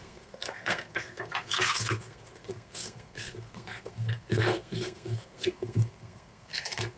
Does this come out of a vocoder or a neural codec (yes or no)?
yes